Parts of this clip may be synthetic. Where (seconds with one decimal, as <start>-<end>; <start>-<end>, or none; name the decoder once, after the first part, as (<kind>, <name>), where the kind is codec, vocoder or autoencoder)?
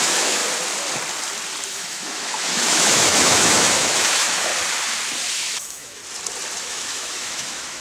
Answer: 0.0-0.4 (autoencoder, DAC-VAE); 1.7-4.5; 5.3-6.0; 6.6-7.8